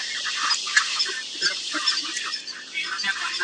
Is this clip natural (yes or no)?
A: no